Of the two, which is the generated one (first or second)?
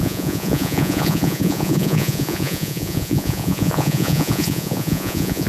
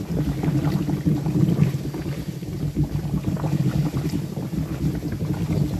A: first